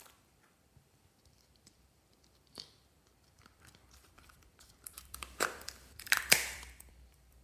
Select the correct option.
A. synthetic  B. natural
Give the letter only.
A